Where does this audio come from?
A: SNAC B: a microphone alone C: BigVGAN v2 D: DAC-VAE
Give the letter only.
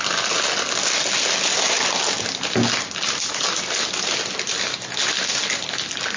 B